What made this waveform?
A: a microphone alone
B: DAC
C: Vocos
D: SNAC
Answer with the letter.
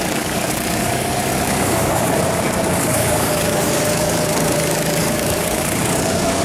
B